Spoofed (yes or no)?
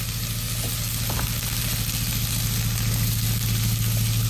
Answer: no